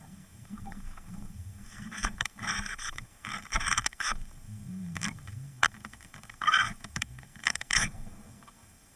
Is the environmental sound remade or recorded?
remade